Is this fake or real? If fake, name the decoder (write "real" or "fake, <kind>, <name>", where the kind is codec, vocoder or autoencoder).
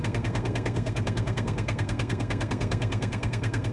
fake, codec, SNAC